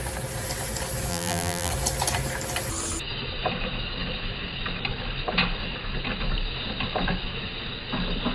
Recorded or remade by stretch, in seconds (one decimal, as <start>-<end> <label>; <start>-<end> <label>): 0.0-1.1 recorded; 1.1-1.7 remade; 1.7-8.3 recorded